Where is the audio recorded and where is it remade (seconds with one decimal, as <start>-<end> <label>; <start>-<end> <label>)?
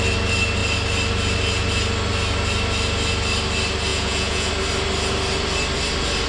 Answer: 0.0-3.9 recorded; 3.9-4.5 remade; 4.5-6.3 recorded